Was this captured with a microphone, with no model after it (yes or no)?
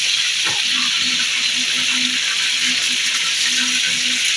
yes